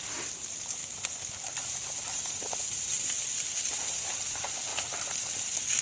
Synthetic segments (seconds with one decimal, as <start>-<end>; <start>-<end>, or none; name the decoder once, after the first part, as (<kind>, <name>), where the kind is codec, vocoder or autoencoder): 0.8-4.3 (vocoder, BigVGAN v2)